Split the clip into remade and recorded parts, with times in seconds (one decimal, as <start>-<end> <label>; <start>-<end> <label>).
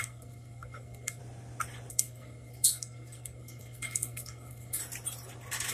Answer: 0.0-1.2 remade; 1.2-1.9 recorded; 1.9-4.8 remade; 4.8-5.7 recorded